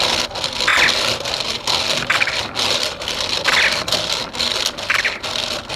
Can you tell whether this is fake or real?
real